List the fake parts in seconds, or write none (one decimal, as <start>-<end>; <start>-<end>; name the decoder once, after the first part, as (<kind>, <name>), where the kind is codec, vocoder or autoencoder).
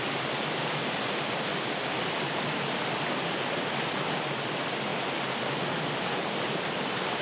1.5-2.0 (codec, DAC)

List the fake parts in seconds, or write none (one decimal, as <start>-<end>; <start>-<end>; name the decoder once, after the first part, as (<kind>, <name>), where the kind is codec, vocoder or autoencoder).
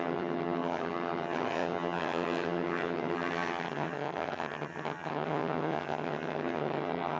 0.0-7.2 (vocoder, HiFi-GAN)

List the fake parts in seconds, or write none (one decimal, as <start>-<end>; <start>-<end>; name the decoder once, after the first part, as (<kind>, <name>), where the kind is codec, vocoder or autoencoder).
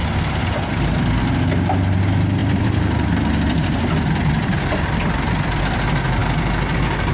0.0-0.6 (vocoder, BigVGAN v2); 2.4-5.6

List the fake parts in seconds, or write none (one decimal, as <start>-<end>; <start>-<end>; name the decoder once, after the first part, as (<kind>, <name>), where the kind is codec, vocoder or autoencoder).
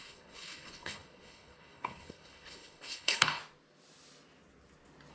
0.0-3.4 (codec, HILCodec)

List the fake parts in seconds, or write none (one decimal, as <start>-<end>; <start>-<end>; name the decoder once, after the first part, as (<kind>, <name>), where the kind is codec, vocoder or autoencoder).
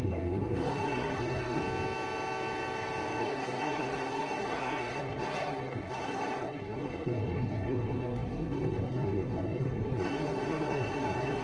0.0-1.6 (codec, SNAC); 3.2-11.4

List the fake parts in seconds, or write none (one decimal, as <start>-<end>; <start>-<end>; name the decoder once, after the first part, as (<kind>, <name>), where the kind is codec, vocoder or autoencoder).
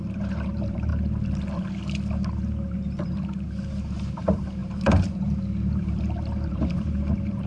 0.0-0.9 (vocoder, BigVGAN v2); 3.8-7.5